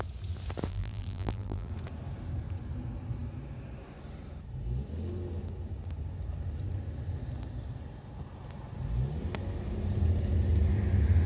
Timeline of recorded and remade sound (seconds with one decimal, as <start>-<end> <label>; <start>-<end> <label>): 0.0-0.7 recorded; 0.7-1.7 remade; 1.7-11.3 recorded